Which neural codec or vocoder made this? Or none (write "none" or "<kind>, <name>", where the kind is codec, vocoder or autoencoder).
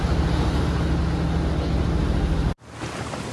none